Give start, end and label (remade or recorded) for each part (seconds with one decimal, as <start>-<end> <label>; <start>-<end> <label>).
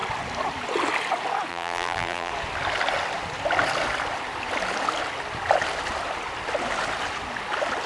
0.0-1.5 recorded; 1.5-2.3 remade; 2.3-7.9 recorded